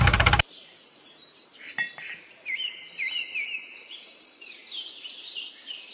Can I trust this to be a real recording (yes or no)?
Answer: no